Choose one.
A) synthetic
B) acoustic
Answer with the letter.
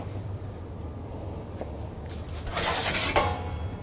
B